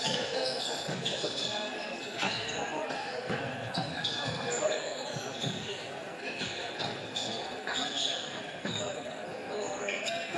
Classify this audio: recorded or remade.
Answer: remade